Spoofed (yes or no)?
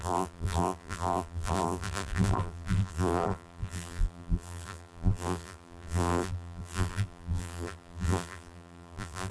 yes